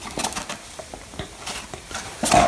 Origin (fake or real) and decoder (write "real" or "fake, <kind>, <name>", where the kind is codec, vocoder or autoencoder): real